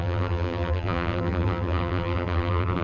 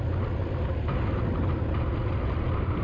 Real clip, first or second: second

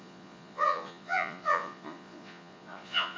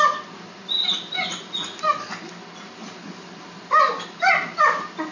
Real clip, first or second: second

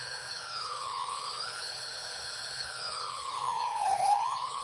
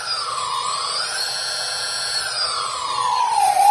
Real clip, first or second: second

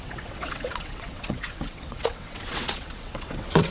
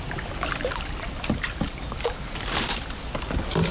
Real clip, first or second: second